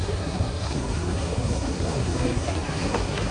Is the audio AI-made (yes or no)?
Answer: yes